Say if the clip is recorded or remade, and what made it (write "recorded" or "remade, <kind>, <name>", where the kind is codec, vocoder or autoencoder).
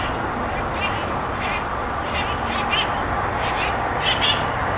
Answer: recorded